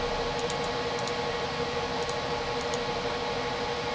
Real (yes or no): yes